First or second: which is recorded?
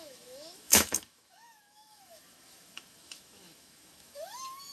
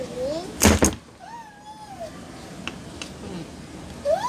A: second